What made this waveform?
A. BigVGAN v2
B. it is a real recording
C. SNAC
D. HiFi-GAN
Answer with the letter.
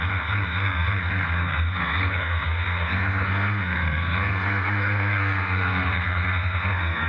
C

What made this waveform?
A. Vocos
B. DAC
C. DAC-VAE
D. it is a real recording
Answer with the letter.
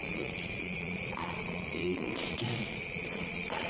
A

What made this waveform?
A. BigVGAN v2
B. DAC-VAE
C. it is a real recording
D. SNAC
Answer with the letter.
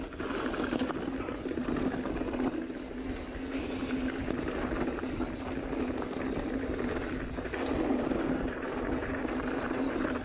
C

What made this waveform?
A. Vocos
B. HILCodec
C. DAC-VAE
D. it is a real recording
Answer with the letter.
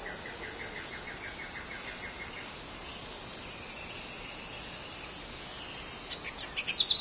D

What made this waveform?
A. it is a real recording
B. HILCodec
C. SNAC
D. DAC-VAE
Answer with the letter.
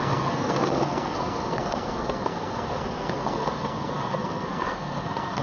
C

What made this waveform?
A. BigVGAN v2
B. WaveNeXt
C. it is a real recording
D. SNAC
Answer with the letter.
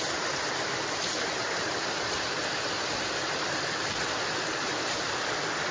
A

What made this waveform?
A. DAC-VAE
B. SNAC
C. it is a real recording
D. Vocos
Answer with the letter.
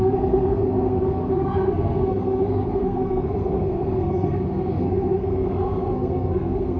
B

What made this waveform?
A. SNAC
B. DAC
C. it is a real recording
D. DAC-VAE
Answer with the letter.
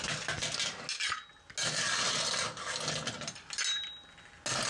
C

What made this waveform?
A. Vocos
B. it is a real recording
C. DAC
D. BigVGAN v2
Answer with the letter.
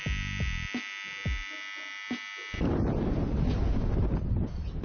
B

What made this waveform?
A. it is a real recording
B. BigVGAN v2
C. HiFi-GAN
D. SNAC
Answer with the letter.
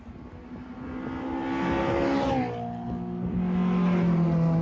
A